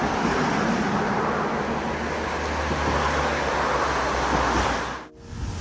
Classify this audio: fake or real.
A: real